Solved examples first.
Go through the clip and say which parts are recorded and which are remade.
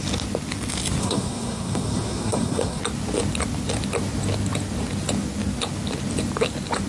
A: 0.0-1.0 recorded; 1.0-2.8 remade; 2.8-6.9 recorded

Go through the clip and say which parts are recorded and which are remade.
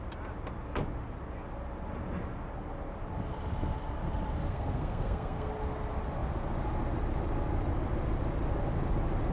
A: 0.0-4.5 recorded; 4.5-5.5 remade; 5.5-9.3 recorded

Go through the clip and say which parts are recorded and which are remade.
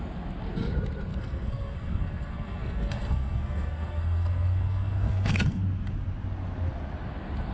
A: 0.0-1.1 recorded; 1.1-5.6 remade; 5.6-7.5 recorded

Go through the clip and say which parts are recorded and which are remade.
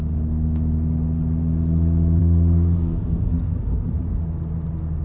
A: 0.0-2.2 recorded; 2.2-3.9 remade; 3.9-5.0 recorded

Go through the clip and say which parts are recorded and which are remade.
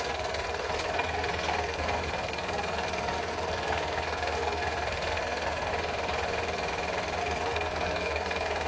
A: 0.0-5.7 remade; 5.7-7.2 recorded; 7.2-8.7 remade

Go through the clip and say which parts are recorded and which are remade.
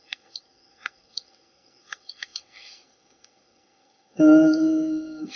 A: 0.0-5.4 remade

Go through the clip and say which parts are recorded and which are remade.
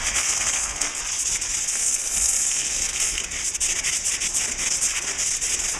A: 0.0-1.0 remade; 1.0-1.6 recorded; 1.6-3.2 remade; 3.2-5.8 recorded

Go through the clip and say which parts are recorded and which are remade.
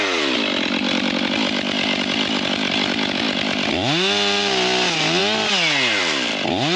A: 0.0-6.8 recorded